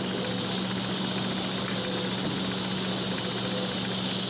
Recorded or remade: recorded